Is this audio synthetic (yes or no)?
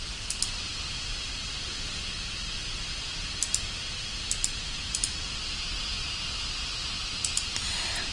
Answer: no